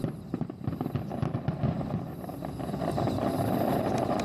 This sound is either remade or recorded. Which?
recorded